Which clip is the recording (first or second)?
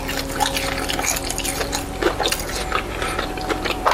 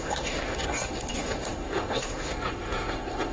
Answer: first